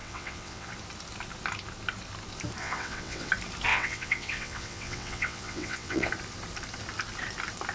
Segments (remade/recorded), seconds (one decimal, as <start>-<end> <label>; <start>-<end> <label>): 0.0-0.7 remade; 0.7-2.6 recorded; 2.6-3.3 remade; 3.3-3.7 recorded; 3.7-6.1 remade; 6.1-7.7 recorded